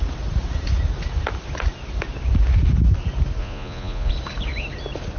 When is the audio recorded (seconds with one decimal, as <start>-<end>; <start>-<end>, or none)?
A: 0.0-3.4; 4.1-5.2